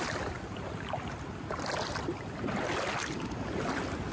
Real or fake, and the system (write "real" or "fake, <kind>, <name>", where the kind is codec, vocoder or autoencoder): real